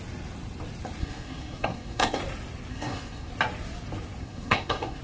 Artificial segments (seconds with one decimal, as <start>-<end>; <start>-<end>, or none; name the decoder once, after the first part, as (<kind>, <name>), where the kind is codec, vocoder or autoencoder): 1.0-2.2 (codec, SNAC); 2.7-3.3; 4.2-5.0